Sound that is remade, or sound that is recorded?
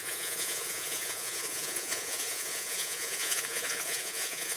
remade